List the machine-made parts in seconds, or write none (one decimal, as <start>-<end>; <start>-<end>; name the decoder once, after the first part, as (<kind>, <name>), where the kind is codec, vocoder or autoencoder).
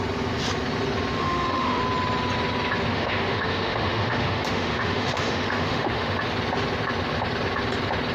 1.2-1.8 (autoencoder, DAC-VAE); 2.9-6.2